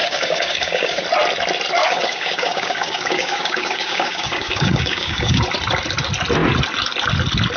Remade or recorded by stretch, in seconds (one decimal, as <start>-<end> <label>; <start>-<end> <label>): 0.0-1.0 remade; 1.0-1.8 recorded; 1.8-5.4 remade; 5.4-7.6 recorded